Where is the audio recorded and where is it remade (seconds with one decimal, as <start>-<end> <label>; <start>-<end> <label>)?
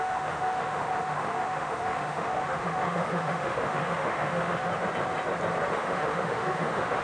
0.0-4.7 remade; 4.7-5.7 recorded; 5.7-7.0 remade